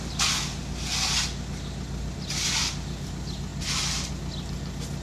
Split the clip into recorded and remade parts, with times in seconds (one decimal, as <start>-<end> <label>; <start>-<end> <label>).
0.0-5.0 recorded